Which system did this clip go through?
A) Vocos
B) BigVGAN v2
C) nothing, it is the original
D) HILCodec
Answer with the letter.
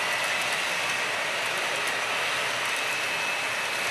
C